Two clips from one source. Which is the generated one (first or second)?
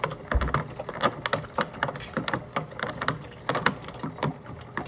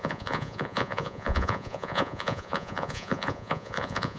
second